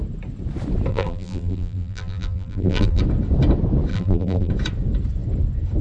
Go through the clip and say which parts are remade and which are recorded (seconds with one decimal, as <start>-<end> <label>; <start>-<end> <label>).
0.0-0.9 recorded; 0.9-3.0 remade; 3.0-3.9 recorded; 3.9-4.5 remade; 4.5-5.8 recorded